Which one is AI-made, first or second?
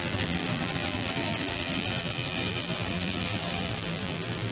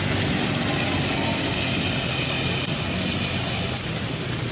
first